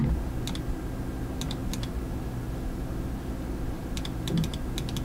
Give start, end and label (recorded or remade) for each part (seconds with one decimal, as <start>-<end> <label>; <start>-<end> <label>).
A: 0.0-5.0 recorded